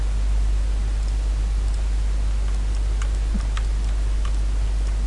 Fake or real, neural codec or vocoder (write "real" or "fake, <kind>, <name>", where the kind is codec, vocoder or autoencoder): real